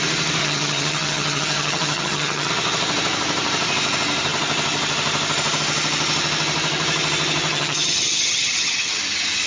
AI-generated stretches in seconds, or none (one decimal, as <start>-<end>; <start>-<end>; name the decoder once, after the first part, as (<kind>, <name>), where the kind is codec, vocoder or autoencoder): 0.4-2.5 (vocoder, HiFi-GAN); 7.5-9.0